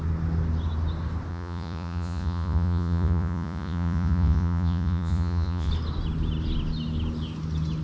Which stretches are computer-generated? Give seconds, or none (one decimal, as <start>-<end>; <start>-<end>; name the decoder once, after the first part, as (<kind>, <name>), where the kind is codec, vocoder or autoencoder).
1.3-5.7 (vocoder, Vocos)

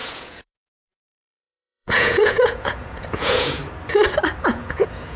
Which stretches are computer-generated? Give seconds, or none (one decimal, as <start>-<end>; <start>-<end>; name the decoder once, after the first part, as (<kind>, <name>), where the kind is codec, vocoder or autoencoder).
0.0-3.6 (vocoder, Vocos); 4.4-5.2

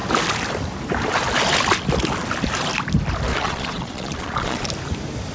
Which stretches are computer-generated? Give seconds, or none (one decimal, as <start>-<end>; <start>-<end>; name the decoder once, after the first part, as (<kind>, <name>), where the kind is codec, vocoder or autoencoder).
3.3-4.7 (vocoder, Vocos)

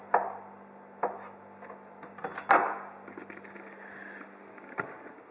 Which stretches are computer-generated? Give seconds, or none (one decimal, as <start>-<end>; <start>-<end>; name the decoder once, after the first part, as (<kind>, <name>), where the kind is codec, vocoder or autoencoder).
none